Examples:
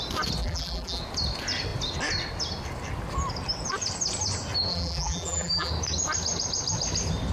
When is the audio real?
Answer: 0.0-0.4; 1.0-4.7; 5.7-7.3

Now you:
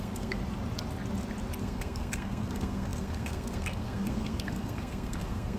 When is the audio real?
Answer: 0.4-1.6

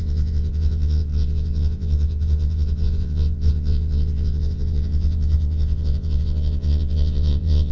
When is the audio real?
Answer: none

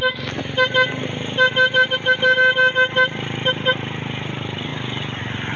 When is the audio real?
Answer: 0.0-5.6

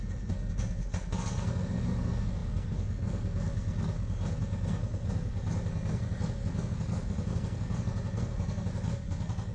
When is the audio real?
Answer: none